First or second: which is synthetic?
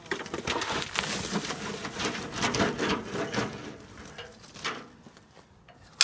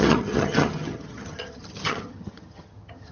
second